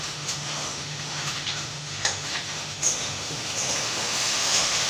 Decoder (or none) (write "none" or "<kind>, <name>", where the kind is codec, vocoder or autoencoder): autoencoder, DAC-VAE